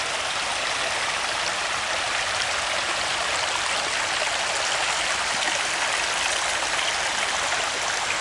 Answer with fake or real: real